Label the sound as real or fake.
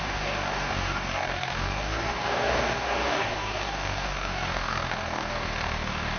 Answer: fake